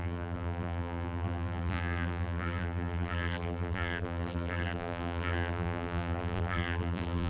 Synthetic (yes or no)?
yes